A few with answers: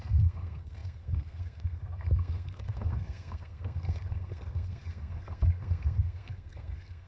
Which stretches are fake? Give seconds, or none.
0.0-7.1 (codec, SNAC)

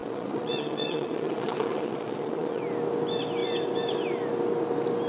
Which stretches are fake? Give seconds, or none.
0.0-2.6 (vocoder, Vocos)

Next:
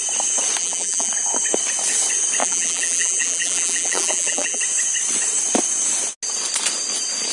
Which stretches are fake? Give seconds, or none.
0.6-1.1 (vocoder, BigVGAN v2); 2.4-4.6

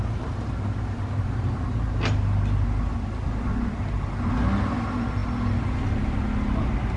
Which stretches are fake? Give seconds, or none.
none

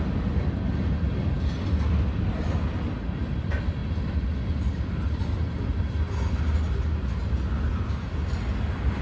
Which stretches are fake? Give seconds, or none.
none